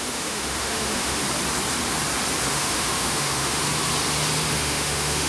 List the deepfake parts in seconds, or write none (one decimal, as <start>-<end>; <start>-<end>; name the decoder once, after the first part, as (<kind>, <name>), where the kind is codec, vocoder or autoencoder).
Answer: 0.0-1.2 (autoencoder, DAC-VAE); 2.5-3.6; 4.5-5.3